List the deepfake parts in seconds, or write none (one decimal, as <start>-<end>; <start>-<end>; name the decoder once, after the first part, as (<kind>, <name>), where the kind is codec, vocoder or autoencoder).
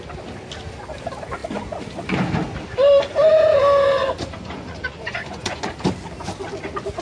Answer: 4.0-5.7 (vocoder, Vocos)